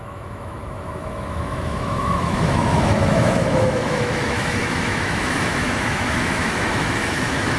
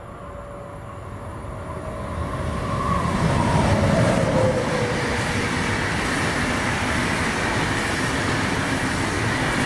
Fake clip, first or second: first